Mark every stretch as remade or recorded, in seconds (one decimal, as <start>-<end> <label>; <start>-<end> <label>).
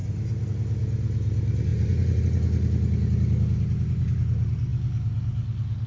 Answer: 0.0-1.7 recorded; 1.7-2.2 remade; 2.2-5.9 recorded